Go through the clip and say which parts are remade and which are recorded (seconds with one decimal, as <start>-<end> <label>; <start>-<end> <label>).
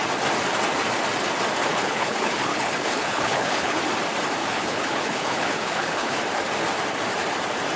0.0-1.6 recorded; 1.6-3.8 remade; 3.8-4.4 recorded; 4.4-6.2 remade; 6.2-7.8 recorded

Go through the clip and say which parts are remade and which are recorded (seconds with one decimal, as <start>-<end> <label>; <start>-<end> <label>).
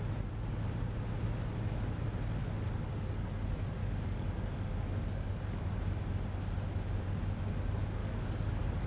0.0-2.4 recorded; 2.4-3.3 remade; 3.3-3.8 recorded; 3.8-5.7 remade; 5.7-8.0 recorded; 8.0-8.9 remade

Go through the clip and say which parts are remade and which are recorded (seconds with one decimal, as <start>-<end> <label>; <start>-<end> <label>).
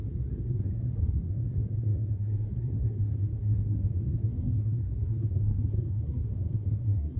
0.0-7.2 remade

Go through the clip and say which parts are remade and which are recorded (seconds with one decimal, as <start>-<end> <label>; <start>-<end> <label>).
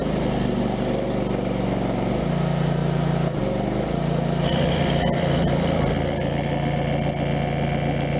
0.0-8.2 recorded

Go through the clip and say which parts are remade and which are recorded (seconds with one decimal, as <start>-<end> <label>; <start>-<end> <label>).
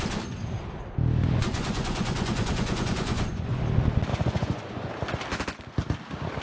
0.0-1.2 recorded; 1.2-3.6 remade; 3.6-4.1 recorded; 4.1-4.9 remade; 4.9-6.4 recorded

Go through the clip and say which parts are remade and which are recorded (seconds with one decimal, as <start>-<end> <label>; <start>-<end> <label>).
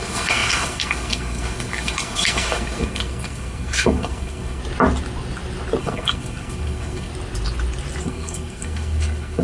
0.0-4.6 remade; 4.6-5.8 recorded; 5.8-7.1 remade; 7.1-8.0 recorded; 8.0-9.4 remade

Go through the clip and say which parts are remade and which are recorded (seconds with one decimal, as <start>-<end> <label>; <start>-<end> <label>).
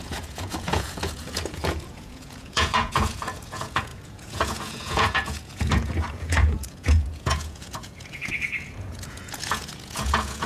0.0-10.5 remade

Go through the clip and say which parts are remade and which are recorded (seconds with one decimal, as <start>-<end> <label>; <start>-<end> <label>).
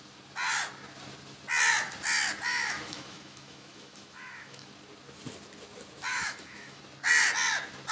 0.0-2.5 recorded; 2.5-4.7 remade; 4.7-6.1 recorded; 6.1-6.8 remade; 6.8-7.9 recorded